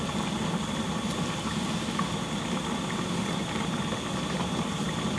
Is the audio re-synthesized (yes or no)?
no